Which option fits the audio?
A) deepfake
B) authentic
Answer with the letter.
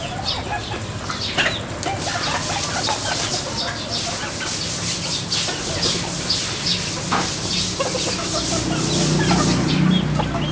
B